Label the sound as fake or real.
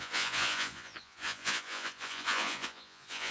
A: fake